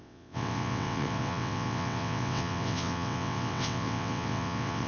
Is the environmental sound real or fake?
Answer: fake